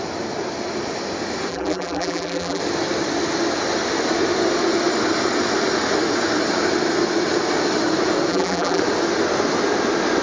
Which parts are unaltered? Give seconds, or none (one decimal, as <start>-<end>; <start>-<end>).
0.0-1.5; 2.6-8.3; 8.8-10.2